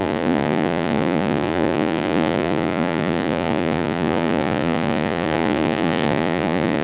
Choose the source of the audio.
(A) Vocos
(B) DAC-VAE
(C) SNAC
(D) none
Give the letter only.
A